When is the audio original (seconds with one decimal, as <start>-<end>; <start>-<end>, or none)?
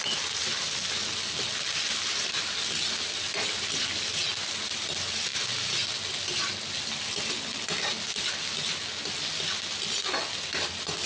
0.0-11.1